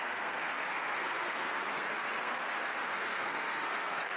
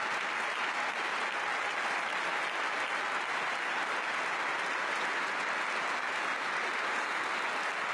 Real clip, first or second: second